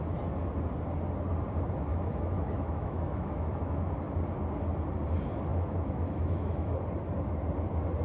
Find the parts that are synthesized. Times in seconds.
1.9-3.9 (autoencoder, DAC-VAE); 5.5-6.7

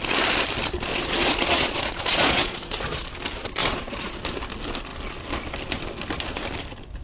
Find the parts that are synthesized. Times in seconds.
0.9-3.1 (vocoder, Vocos); 3.6-4.2

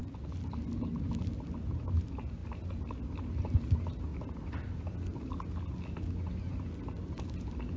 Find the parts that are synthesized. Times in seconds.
none

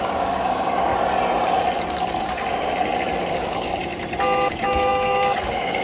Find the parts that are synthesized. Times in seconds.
0.0-0.9 (codec, DAC); 2.2-2.7; 3.2-3.7; 4.5-5.8

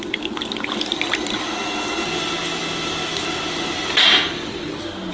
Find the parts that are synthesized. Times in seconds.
none

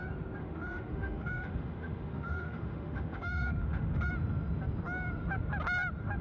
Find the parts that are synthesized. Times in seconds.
0.4-4.1 (autoencoder, DAC-VAE)